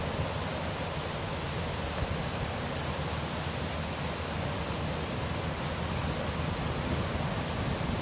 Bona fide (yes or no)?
yes